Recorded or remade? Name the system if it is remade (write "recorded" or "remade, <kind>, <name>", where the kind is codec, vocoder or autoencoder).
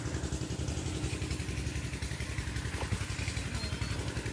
recorded